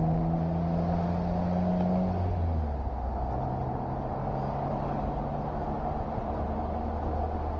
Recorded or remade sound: recorded